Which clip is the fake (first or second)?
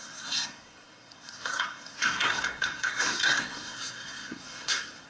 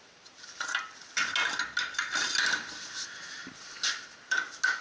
first